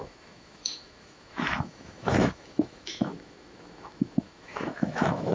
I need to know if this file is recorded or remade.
remade